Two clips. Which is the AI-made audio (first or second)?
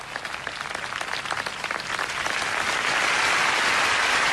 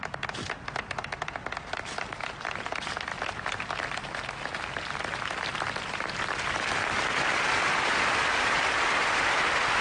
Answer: second